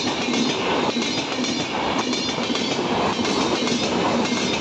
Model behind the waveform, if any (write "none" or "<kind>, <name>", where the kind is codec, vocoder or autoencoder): none